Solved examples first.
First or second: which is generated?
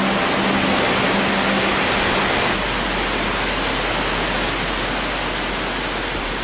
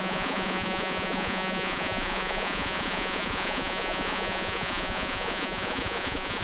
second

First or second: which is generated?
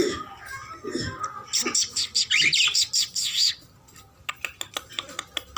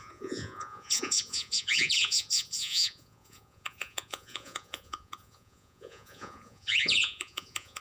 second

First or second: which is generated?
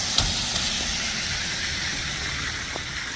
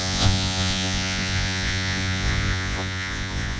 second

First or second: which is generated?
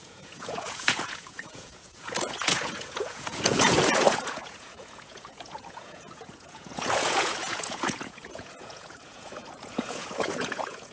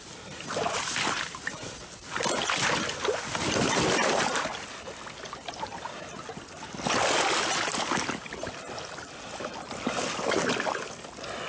first